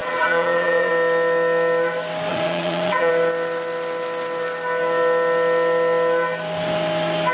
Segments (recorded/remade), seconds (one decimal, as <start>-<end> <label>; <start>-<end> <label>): 0.0-0.9 remade; 0.9-2.3 recorded; 2.3-3.1 remade; 3.1-7.3 recorded

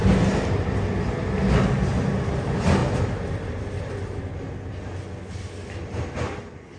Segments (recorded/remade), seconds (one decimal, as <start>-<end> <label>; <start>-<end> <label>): 0.0-6.8 recorded

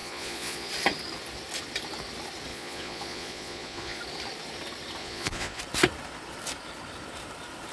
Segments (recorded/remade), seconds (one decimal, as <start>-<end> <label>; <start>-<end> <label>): 0.0-0.7 remade; 0.7-2.5 recorded; 2.5-4.0 remade; 4.0-5.0 recorded; 5.0-5.6 remade; 5.6-7.7 recorded

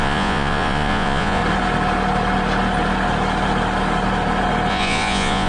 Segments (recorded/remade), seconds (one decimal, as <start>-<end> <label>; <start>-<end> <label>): 0.0-1.4 remade; 1.4-4.7 recorded; 4.7-5.5 remade

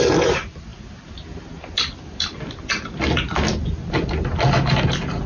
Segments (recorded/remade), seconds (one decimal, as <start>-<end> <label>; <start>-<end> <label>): 0.0-5.3 recorded

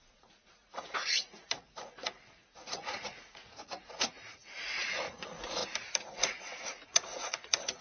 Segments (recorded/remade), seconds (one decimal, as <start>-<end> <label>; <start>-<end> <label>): 0.0-5.6 remade; 5.6-6.1 recorded; 6.1-7.8 remade